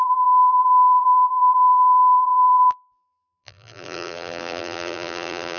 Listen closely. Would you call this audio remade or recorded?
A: remade